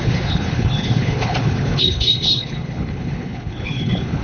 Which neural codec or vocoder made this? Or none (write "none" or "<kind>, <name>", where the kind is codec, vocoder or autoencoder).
codec, HILCodec